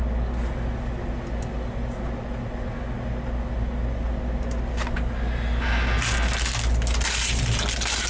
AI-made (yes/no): no